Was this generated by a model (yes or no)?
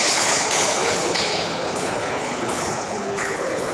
yes